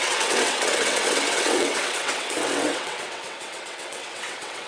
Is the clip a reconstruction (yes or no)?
yes